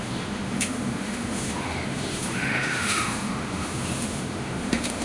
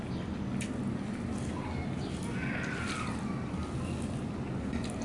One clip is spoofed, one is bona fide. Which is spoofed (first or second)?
first